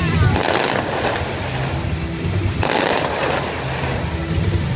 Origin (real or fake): real